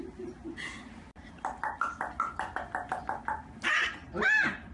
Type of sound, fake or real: real